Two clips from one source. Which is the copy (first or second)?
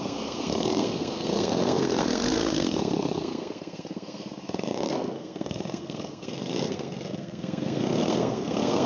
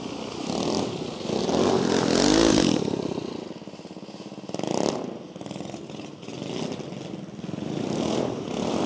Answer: first